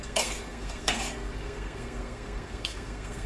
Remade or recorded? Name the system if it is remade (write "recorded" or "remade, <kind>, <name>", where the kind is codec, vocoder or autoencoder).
remade, codec, SNAC